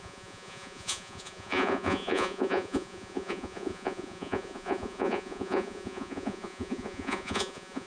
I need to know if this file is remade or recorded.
remade